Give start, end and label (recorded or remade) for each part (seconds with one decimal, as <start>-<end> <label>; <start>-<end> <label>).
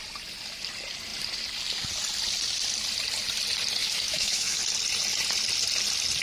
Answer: 0.0-3.8 recorded; 3.8-4.6 remade; 4.6-6.2 recorded